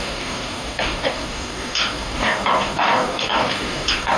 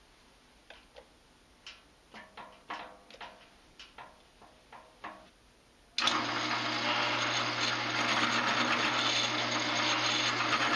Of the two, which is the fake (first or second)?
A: first